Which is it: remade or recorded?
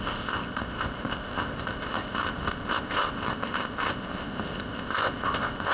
remade